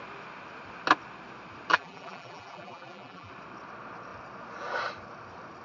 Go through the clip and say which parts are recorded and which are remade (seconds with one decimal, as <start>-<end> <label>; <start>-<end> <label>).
0.0-1.7 recorded; 1.7-3.3 remade; 3.3-5.6 recorded